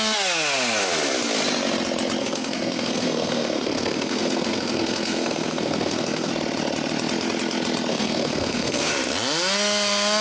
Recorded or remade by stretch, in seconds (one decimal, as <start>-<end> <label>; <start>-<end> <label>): 0.0-2.2 recorded; 2.2-6.3 remade; 6.3-7.9 recorded; 7.9-8.9 remade; 8.9-10.2 recorded